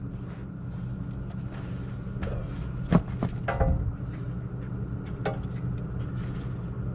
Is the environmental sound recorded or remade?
recorded